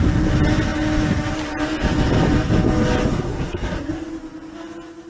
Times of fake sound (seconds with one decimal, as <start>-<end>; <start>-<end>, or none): 3.1-3.9